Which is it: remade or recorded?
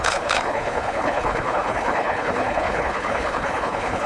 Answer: remade